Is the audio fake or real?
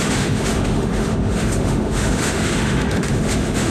fake